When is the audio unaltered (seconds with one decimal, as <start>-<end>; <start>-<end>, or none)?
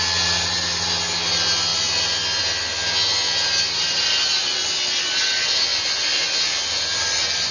0.0-5.7